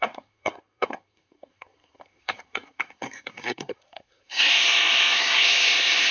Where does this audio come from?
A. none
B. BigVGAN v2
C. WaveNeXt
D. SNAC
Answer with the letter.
D